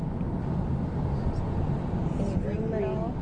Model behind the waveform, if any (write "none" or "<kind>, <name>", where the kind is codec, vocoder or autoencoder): none